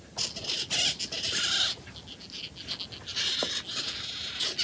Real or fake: real